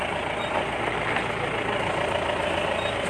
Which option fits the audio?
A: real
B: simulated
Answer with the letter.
A